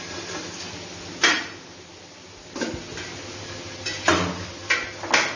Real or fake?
real